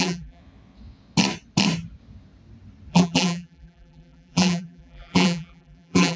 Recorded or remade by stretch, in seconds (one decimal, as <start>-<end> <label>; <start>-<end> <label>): 0.0-0.4 remade; 0.4-2.9 recorded; 2.9-6.2 remade